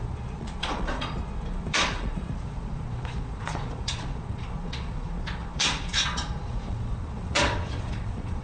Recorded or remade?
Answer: remade